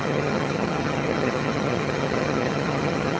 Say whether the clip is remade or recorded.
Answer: remade